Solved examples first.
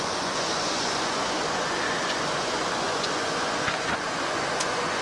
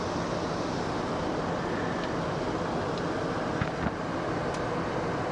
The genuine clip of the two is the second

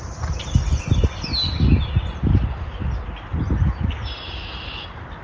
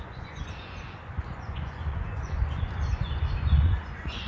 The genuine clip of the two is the first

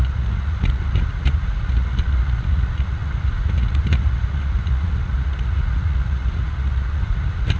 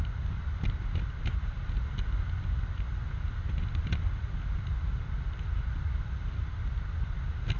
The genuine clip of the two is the second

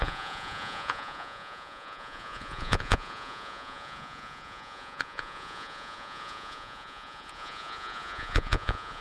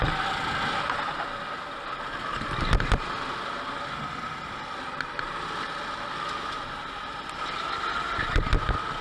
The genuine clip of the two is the second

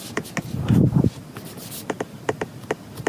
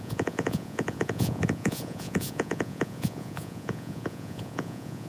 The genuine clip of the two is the first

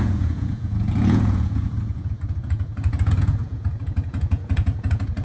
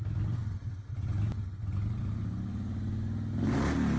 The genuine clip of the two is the second